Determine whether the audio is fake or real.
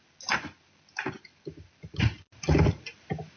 real